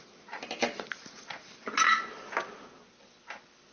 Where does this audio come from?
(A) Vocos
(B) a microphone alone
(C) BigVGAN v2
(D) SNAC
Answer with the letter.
B